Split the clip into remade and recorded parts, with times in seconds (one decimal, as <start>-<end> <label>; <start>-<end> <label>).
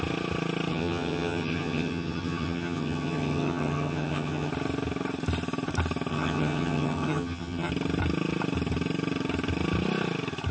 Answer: 0.0-0.7 recorded; 0.7-4.5 remade; 4.5-6.1 recorded; 6.1-7.7 remade; 7.7-10.5 recorded